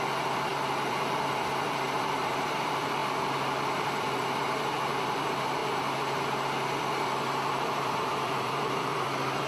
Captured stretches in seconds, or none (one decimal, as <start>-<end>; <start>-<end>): 3.0-3.8; 5.6-6.8